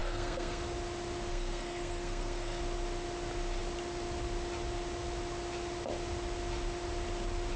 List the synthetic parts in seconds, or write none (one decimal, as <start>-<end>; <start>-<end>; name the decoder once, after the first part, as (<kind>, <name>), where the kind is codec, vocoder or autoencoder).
0.0-0.6 (codec, SNAC); 1.3-2.6